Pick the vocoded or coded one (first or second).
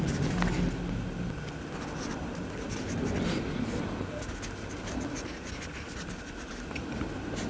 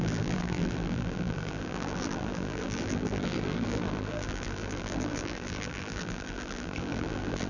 second